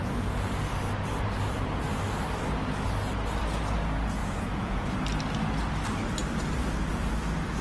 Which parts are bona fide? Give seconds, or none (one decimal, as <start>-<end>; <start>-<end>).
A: 0.0-4.2; 4.9-7.6